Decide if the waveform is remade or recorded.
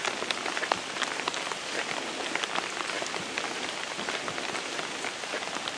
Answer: recorded